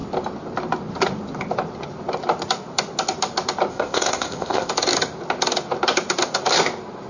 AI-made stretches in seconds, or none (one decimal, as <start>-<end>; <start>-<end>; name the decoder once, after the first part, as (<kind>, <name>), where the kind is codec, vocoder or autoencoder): 3.7-4.7 (codec, ZipCodec)